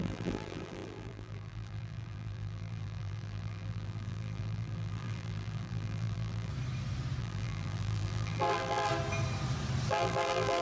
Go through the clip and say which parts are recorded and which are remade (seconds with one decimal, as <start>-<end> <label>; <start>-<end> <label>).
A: 0.0-6.5 remade; 6.5-7.2 recorded; 7.2-8.9 remade; 8.9-9.9 recorded; 9.9-10.6 remade